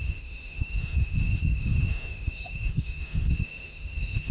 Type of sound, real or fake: fake